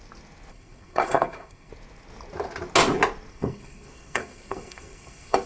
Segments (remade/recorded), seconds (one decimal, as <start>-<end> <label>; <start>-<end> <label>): 0.0-0.5 recorded; 0.5-1.7 remade; 1.7-3.3 recorded; 3.3-5.5 remade